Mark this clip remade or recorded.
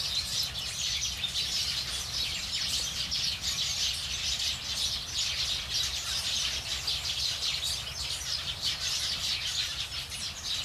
recorded